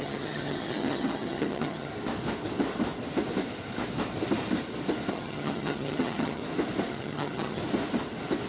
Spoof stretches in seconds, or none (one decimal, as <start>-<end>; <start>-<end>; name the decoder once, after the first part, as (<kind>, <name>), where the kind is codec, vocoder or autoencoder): 0.0-1.9 (vocoder, HiFi-GAN); 5.1-6.4; 6.9-7.6